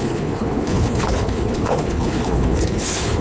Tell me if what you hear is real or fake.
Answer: fake